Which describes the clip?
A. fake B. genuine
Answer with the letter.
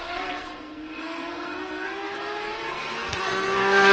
A